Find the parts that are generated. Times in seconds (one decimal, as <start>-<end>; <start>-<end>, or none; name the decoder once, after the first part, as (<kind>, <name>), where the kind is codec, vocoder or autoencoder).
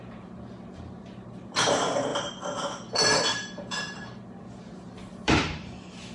0.0-2.1 (vocoder, BigVGAN v2); 3.2-6.1